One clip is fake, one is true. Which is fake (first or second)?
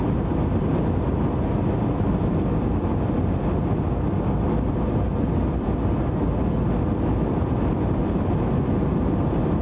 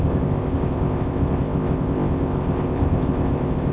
second